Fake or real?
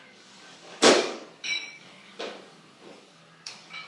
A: fake